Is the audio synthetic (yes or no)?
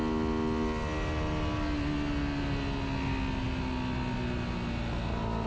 no